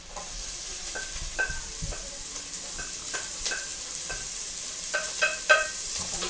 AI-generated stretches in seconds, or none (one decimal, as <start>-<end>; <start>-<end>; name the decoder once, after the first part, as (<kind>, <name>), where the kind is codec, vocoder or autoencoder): 0.0-3.7 (vocoder, BigVGAN v2); 4.8-6.3